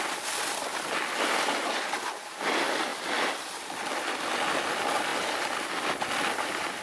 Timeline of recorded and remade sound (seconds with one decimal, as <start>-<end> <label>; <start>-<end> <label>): 0.0-6.8 recorded